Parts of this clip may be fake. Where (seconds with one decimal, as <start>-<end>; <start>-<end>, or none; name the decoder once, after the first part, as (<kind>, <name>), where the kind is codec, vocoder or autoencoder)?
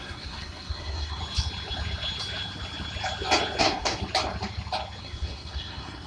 0.0-1.2 (codec, SNAC); 3.6-4.0; 5.0-6.1